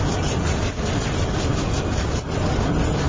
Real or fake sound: real